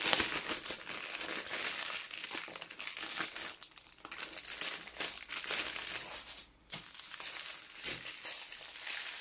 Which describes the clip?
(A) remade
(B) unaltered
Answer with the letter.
B